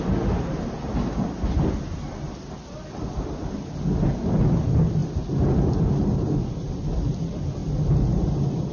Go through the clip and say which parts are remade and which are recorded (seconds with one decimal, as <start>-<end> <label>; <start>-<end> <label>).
0.0-5.0 recorded; 5.0-7.0 remade; 7.0-8.7 recorded